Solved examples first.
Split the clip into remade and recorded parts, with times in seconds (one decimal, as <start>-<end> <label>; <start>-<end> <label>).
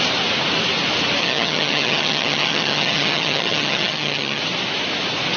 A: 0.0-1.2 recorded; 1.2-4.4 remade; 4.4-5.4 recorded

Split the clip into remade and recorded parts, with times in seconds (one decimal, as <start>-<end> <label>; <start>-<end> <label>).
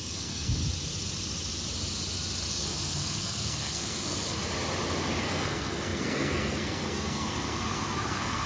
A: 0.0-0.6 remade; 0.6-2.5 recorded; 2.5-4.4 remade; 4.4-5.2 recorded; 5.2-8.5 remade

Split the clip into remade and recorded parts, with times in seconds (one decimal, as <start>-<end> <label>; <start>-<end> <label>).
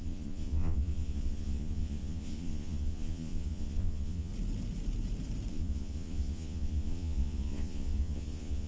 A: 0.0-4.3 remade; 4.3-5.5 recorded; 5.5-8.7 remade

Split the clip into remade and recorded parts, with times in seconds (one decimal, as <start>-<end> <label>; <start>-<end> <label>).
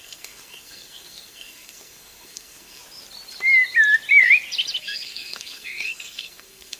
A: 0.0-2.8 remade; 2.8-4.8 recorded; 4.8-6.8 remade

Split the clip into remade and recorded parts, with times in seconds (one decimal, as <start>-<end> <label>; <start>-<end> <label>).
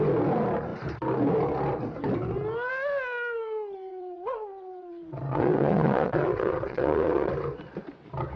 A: 0.0-3.9 recorded; 3.9-7.3 remade; 7.3-8.4 recorded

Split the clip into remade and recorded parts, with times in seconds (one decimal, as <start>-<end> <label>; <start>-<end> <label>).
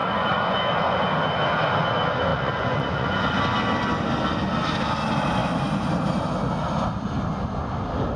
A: 0.0-0.6 remade; 0.6-2.3 recorded; 2.3-3.4 remade; 3.4-8.2 recorded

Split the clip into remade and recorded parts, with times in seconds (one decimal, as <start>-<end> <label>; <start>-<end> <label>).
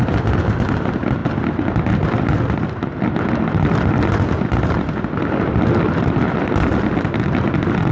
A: 0.0-7.9 recorded